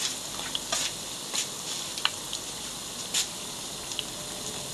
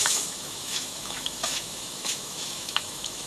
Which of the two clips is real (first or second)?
first